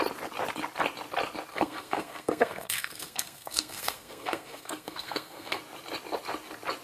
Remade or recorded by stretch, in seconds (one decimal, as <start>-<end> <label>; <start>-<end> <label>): 0.0-1.5 recorded; 1.5-5.6 remade; 5.6-6.8 recorded